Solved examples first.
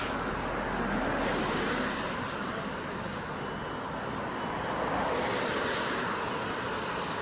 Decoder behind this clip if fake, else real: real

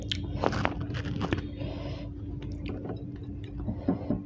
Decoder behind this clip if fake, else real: real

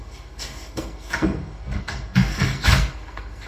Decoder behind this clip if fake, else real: fake, codec, SNAC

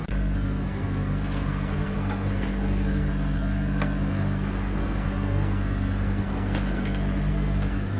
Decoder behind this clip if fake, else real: fake, codec, SNAC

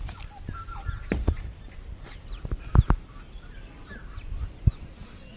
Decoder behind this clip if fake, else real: real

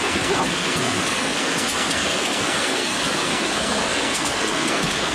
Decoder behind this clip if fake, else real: fake, codec, SNAC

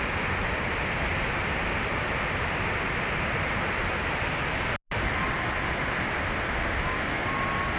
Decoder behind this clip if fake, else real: real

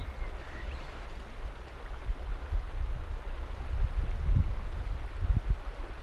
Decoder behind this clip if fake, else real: real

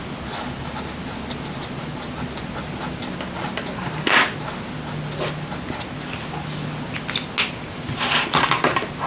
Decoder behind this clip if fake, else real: real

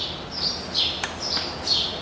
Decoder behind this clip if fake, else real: real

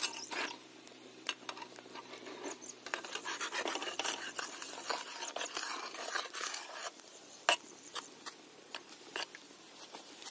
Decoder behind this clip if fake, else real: real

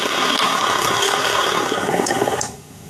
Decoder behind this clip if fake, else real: fake, codec, SNAC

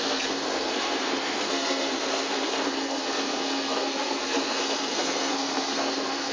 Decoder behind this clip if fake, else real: fake, codec, SNAC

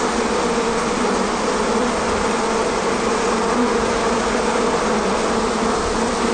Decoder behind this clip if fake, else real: real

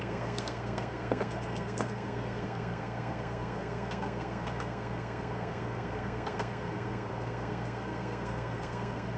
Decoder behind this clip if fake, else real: fake, codec, SNAC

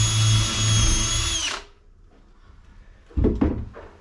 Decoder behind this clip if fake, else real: real